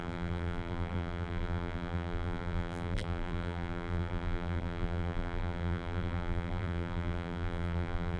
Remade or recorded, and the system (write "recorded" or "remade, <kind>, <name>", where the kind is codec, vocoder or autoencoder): remade, vocoder, BigVGAN v2